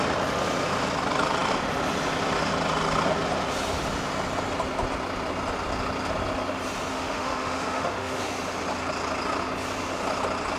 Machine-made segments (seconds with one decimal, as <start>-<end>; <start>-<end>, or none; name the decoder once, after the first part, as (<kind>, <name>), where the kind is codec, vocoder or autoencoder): 6.9-8.2 (autoencoder, DAC-VAE)